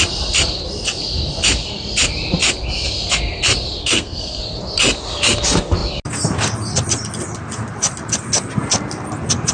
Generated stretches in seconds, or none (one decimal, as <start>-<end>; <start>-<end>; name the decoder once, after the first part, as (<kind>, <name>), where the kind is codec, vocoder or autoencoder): 3.8-4.4 (codec, SNAC)